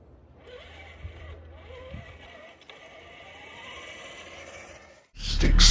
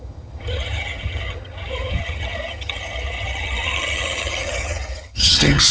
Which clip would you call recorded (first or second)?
first